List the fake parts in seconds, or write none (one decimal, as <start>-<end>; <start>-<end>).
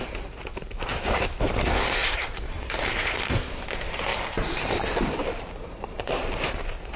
0.9-1.6; 2.0-2.8; 4.1-6.1